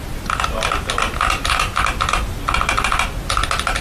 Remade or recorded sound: recorded